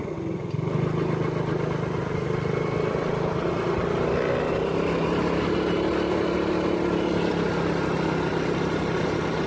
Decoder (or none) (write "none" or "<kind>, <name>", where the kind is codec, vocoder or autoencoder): none